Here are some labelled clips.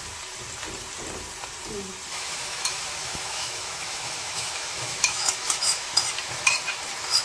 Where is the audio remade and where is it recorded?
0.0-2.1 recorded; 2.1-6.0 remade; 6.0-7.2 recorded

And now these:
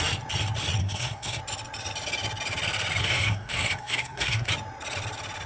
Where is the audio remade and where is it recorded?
0.0-0.8 recorded; 0.8-1.4 remade; 1.4-3.0 recorded; 3.0-4.5 remade; 4.5-5.5 recorded

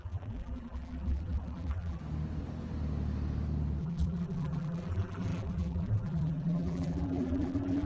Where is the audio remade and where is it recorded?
0.0-2.0 remade; 2.0-3.8 recorded; 3.8-7.9 remade

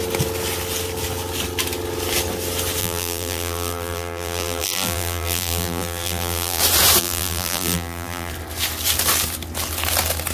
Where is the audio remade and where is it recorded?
0.0-2.8 recorded; 2.8-6.6 remade; 6.6-7.0 recorded; 7.0-8.3 remade; 8.3-10.3 recorded

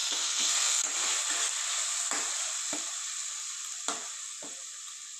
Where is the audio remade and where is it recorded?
0.0-0.9 remade; 0.9-5.2 recorded